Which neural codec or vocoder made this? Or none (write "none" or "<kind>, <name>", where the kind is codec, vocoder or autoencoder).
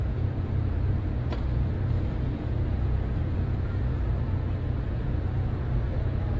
vocoder, Vocos